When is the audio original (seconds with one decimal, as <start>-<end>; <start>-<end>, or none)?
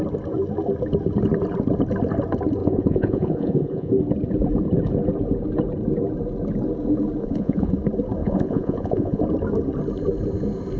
0.0-2.6; 3.9-7.2; 7.7-8.2; 9.2-10.8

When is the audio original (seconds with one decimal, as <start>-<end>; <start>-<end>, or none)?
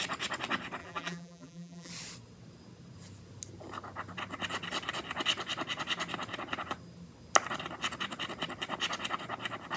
0.0-0.8; 1.9-9.8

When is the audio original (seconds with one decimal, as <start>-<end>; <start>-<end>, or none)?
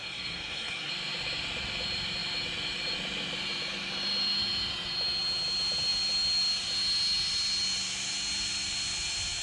0.9-9.4